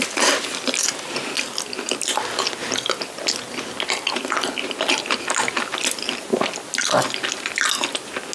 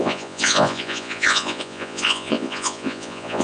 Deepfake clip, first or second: second